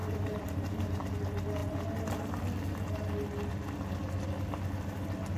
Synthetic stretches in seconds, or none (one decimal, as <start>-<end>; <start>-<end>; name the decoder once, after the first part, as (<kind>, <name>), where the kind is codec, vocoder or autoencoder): 0.0-1.1 (vocoder, BigVGAN v2)